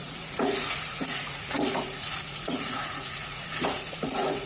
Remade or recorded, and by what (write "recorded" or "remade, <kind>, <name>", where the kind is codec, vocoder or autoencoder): remade, vocoder, Vocos